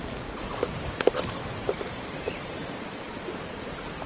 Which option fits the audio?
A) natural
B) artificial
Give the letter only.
B